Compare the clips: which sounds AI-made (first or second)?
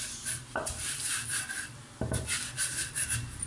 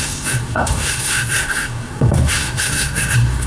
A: second